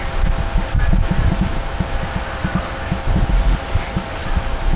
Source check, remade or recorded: recorded